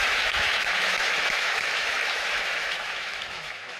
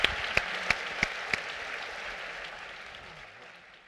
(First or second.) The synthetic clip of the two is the first